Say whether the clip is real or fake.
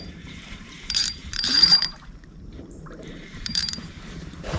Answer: fake